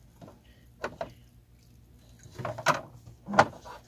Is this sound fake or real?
real